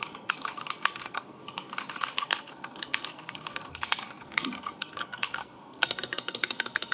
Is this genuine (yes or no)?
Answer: no